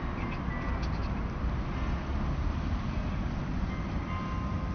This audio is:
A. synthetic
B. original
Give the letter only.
B